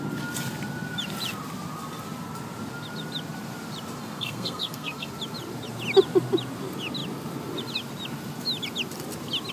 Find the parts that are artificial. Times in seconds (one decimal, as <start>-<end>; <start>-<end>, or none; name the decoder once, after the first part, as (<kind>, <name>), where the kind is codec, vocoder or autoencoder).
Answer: 4.0-5.1 (codec, SNAC)